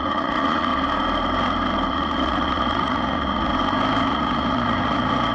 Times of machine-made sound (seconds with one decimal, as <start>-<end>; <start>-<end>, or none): 0.0-0.7; 1.9-3.5; 4.0-5.3